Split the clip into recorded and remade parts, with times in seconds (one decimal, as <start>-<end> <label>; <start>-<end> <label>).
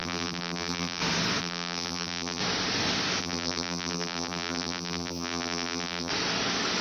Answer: 0.0-1.0 remade; 1.0-1.4 recorded; 1.4-2.4 remade; 2.4-3.2 recorded; 3.2-6.1 remade; 6.1-6.8 recorded